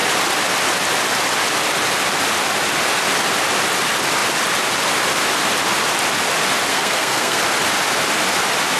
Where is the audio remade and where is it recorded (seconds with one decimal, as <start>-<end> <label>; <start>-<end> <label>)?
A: 0.0-6.7 recorded; 6.7-7.4 remade; 7.4-8.8 recorded